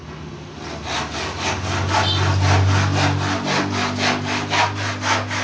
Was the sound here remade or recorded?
recorded